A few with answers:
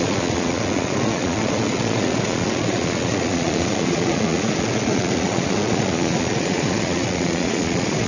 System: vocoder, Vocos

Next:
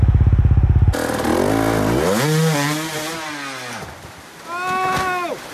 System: none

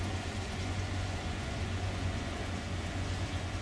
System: vocoder, Vocos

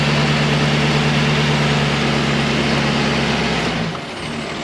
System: none